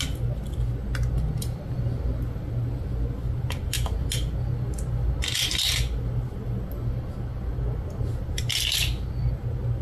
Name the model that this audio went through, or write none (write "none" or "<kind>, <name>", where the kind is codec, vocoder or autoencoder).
none